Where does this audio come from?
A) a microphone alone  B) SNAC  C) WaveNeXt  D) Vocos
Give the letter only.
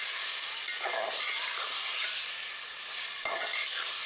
A